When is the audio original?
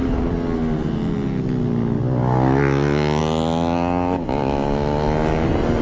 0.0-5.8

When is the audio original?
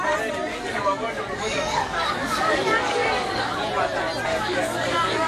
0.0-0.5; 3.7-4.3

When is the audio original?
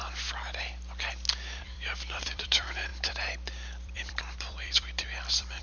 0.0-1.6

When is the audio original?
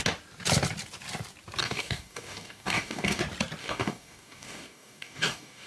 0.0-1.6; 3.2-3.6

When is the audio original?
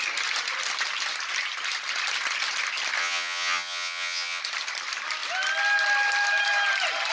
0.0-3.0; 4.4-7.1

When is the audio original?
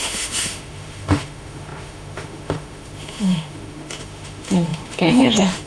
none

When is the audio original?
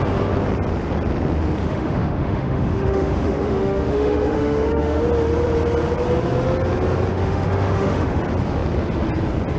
0.0-1.6; 5.0-7.1; 8.2-9.6